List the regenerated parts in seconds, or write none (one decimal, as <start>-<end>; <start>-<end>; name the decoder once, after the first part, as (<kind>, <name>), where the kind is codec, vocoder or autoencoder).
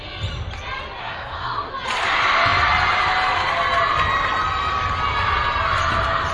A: 1.0-1.7 (codec, SNAC)